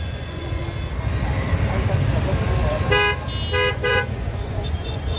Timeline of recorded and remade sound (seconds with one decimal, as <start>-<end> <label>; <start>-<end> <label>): 0.0-0.6 remade; 0.6-3.7 recorded; 3.7-5.2 remade

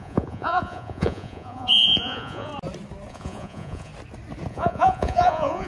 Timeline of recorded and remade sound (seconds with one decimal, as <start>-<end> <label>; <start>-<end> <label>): 0.0-2.5 remade; 2.5-3.1 recorded; 3.1-3.9 remade; 3.9-4.5 recorded; 4.5-5.7 remade